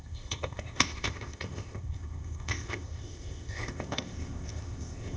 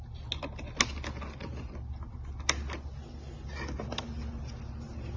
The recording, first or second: second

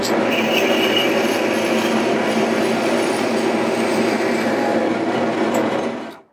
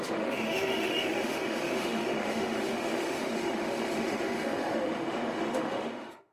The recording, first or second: first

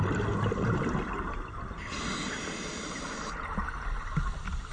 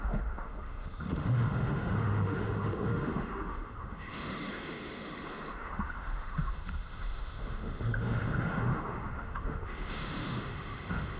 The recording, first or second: first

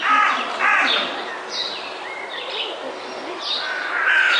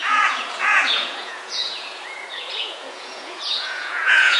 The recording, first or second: first